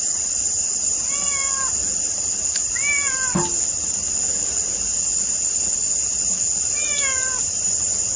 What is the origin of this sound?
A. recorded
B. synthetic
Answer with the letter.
A